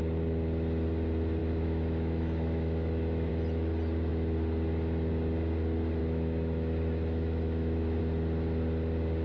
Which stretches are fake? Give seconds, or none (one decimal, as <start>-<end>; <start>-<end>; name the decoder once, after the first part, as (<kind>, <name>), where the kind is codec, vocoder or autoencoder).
1.4-3.3 (autoencoder, DAC-VAE); 6.0-8.0

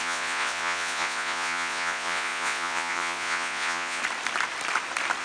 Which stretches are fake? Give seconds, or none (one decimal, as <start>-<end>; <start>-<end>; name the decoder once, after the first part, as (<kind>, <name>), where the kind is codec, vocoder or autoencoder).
0.0-4.0 (vocoder, Vocos)

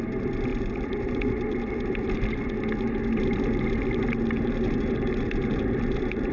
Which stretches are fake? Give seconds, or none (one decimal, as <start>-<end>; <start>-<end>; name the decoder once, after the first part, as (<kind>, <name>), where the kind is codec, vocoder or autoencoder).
0.5-2.2 (vocoder, BigVGAN v2)